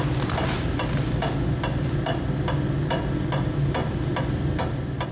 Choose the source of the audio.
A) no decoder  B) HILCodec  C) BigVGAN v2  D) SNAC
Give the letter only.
A